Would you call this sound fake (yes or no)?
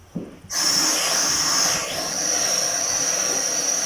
no